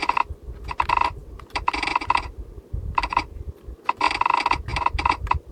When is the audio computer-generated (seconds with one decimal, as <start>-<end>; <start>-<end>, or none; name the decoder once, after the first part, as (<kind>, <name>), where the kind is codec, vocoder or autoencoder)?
1.2-3.8 (vocoder, BigVGAN v2); 4.7-5.5